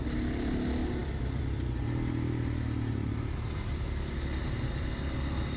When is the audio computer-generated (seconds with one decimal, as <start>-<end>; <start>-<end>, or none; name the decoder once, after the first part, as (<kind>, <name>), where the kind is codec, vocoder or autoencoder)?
none